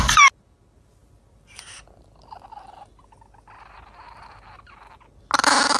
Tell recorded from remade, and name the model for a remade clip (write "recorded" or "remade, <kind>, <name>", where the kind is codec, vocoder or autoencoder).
recorded